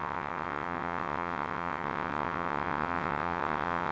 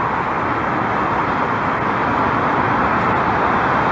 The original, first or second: second